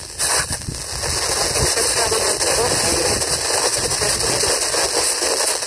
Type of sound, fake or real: real